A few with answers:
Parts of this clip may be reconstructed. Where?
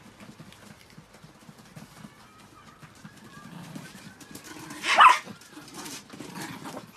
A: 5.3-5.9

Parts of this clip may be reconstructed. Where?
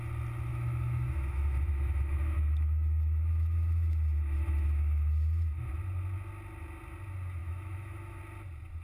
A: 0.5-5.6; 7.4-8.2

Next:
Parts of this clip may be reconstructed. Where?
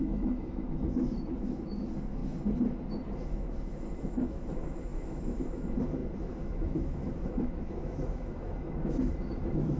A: 0.0-2.2; 3.2-9.8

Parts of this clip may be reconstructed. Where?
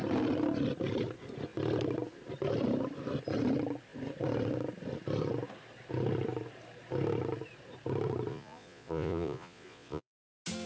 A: 8.3-10.2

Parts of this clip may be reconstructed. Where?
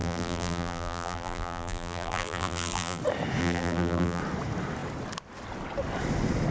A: 0.0-3.0; 3.4-4.2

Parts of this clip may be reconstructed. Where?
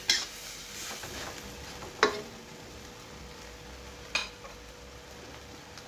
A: none